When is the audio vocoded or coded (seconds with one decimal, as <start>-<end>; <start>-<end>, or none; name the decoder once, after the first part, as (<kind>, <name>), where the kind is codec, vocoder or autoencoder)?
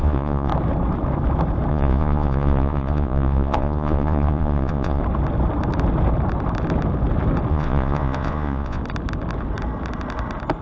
0.0-0.5 (vocoder, Vocos); 1.7-5.0; 7.5-8.8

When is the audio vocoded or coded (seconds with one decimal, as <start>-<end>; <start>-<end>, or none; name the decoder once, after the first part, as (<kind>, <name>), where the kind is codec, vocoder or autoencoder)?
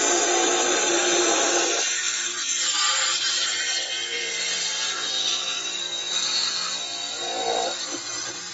0.0-1.7 (vocoder, BigVGAN v2); 2.6-7.3